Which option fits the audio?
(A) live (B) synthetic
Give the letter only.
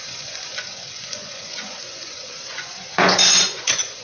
B